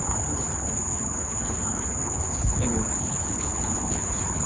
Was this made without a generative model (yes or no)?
no